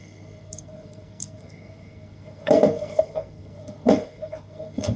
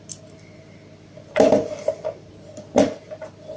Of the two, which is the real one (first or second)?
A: second